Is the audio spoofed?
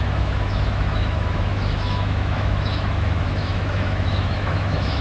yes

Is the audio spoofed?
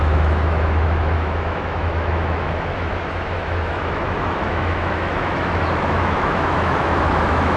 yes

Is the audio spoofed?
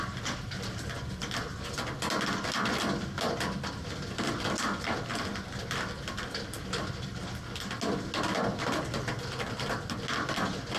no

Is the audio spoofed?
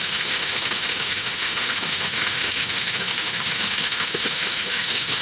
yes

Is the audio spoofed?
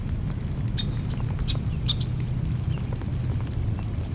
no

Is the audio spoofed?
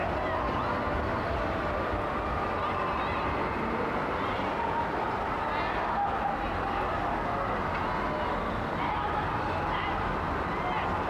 no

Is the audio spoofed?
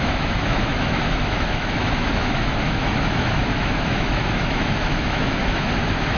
yes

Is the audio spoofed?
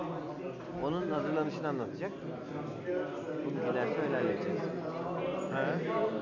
no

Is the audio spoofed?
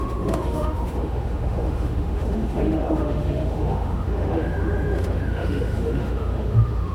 yes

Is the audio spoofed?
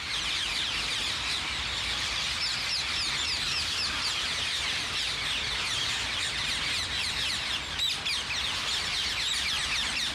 no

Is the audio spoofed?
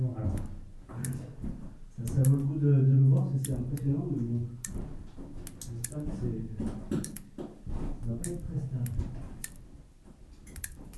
no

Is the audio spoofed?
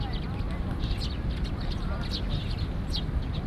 no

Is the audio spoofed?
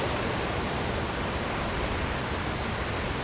no